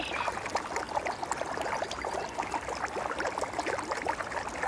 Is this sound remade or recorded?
recorded